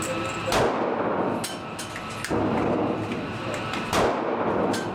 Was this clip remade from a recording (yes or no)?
no